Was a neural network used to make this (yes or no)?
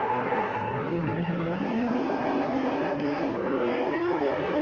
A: yes